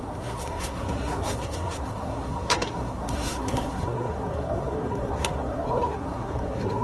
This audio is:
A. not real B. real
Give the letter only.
A